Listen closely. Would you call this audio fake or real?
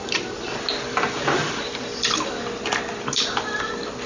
real